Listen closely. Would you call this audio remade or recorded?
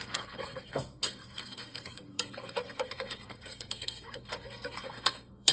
remade